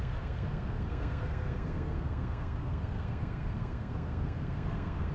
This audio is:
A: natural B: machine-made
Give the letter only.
B